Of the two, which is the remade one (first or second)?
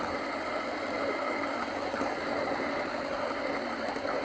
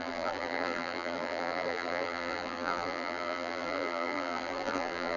second